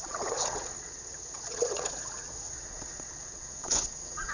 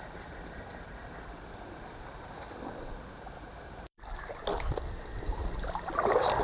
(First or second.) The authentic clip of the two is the second